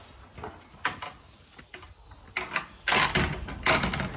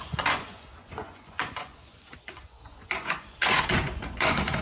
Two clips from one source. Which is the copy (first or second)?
second